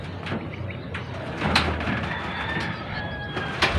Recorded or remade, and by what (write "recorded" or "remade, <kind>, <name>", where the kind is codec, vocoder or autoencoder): remade, vocoder, BigVGAN v2